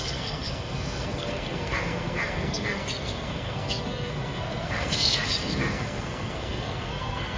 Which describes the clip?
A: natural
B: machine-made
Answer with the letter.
B